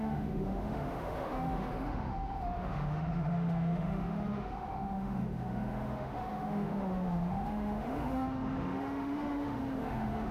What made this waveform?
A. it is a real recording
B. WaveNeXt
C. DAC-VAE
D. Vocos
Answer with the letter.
C